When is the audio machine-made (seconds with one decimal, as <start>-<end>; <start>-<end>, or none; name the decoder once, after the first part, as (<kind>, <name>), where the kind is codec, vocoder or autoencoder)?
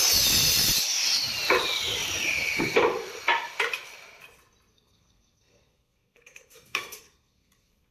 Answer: 4.7-7.9 (codec, SNAC)